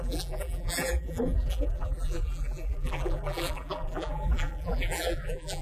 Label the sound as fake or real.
fake